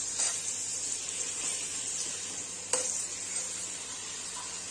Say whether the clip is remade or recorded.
recorded